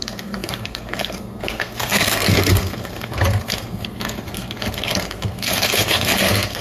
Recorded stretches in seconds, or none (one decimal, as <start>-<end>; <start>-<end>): none